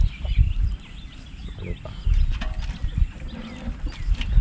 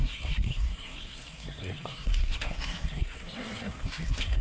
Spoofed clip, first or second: second